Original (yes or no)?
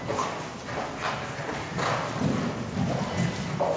yes